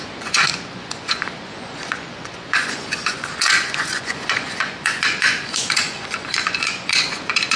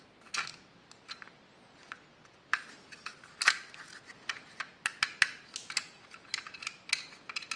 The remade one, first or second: first